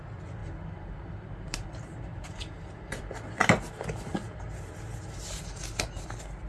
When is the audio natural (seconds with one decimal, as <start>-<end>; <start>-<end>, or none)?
0.0-0.4; 3.3-6.5